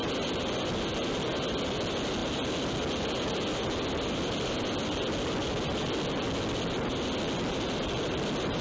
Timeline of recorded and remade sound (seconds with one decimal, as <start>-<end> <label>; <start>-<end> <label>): 0.0-8.6 recorded

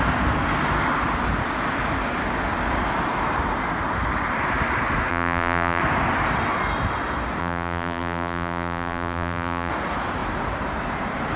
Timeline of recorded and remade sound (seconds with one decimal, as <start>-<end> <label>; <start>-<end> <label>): 0.0-5.1 recorded; 5.1-5.8 remade; 5.8-7.4 recorded; 7.4-9.7 remade; 9.7-11.4 recorded

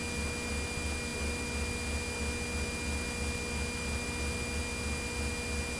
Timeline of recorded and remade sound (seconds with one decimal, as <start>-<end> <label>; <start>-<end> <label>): 0.0-5.8 recorded

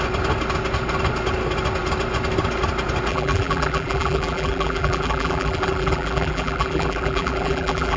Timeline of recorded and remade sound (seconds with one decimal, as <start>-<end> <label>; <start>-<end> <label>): 0.0-3.1 recorded; 3.1-8.0 remade

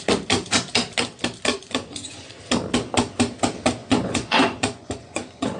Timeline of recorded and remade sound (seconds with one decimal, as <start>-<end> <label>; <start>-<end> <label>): 0.0-1.5 recorded; 1.5-2.3 remade; 2.3-3.8 recorded; 3.8-5.6 remade

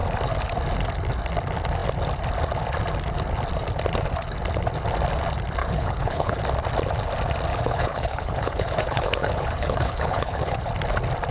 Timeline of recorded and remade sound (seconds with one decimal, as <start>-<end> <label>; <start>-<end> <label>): 0.0-5.6 recorded; 5.6-6.4 remade; 6.4-7.5 recorded; 7.5-10.7 remade; 10.7-11.3 recorded

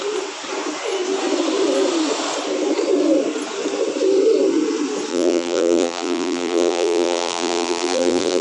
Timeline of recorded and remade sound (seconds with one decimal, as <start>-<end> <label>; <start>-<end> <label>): 0.0-5.1 recorded; 5.1-8.4 remade

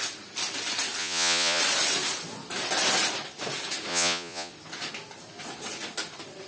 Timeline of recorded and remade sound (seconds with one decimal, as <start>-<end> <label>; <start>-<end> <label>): 0.0-1.0 recorded; 1.0-1.6 remade; 1.6-3.9 recorded; 3.9-4.5 remade; 4.5-6.5 recorded